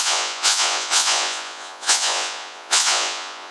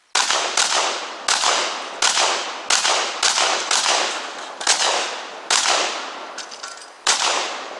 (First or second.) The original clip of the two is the second